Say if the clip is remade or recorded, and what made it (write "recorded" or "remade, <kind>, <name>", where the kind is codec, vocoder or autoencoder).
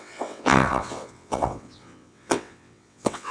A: remade, vocoder, WaveNeXt